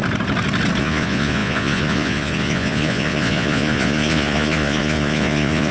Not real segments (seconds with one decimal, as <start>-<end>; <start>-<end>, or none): 0.8-5.7